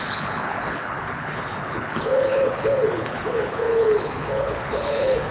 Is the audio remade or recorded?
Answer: remade